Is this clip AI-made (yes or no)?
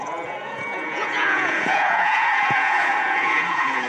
yes